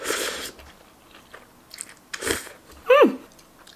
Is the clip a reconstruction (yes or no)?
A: no